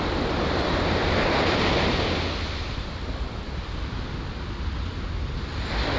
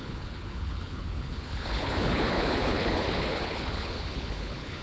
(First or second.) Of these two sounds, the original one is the first